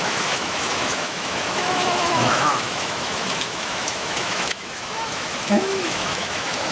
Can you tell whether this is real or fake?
fake